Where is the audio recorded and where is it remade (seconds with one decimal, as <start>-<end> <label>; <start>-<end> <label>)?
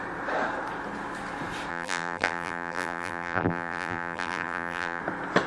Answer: 0.0-1.7 recorded; 1.7-5.0 remade; 5.0-5.5 recorded